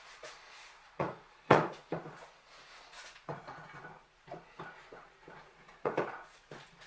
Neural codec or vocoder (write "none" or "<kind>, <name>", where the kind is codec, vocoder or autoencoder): vocoder, Vocos